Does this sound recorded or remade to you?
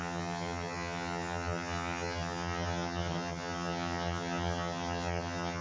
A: remade